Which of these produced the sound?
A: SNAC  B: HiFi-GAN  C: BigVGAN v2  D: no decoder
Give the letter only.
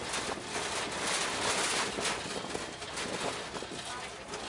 D